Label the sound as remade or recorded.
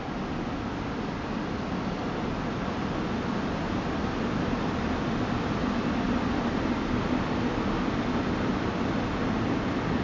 recorded